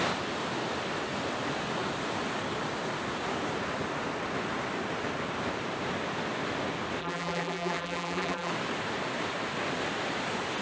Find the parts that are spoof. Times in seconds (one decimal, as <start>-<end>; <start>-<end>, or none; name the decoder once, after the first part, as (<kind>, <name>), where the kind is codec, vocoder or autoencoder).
7.0-8.5 (vocoder, BigVGAN v2)